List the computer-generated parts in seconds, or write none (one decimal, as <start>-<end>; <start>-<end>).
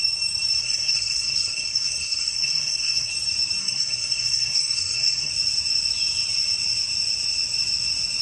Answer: 0.6-3.1; 3.6-5.3